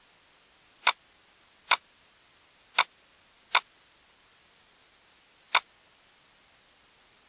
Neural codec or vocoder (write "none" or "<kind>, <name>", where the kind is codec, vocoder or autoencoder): none